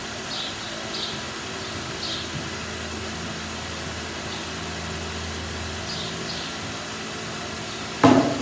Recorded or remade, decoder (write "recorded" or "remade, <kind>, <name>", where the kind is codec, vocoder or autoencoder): recorded